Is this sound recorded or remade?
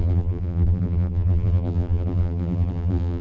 remade